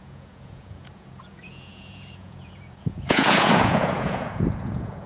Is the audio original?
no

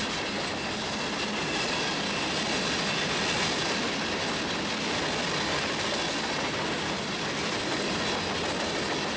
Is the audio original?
yes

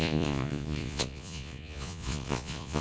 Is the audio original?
no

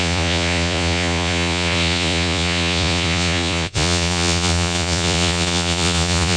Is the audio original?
no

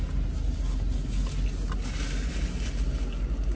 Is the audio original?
yes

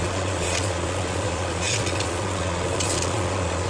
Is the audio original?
no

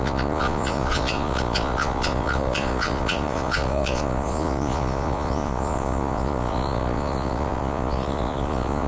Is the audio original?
no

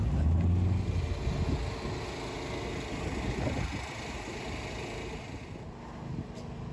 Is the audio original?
yes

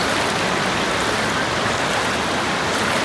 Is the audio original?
yes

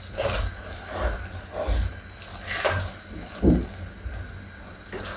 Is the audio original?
yes